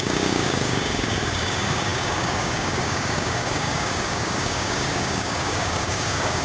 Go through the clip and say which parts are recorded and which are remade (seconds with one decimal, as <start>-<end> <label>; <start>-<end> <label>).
0.0-6.4 remade